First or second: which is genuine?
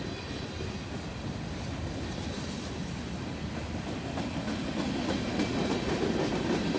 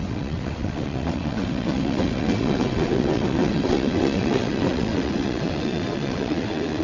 first